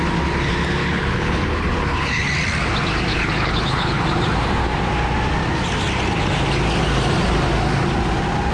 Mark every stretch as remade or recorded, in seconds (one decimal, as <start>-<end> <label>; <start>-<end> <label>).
0.0-0.8 recorded; 0.8-2.2 remade; 2.2-3.1 recorded; 3.1-4.0 remade; 4.0-8.5 recorded